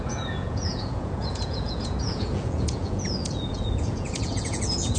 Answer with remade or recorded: remade